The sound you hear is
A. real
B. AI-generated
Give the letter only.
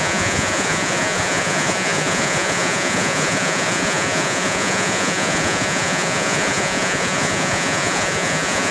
B